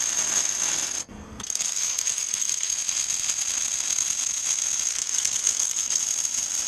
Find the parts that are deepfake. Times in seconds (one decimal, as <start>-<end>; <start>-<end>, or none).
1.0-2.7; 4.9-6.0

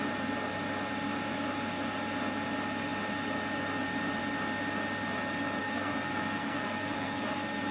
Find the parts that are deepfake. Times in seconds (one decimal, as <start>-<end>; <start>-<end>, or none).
5.6-7.7

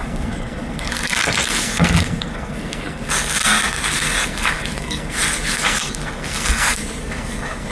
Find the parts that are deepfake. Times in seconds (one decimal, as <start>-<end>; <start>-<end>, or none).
0.0-7.7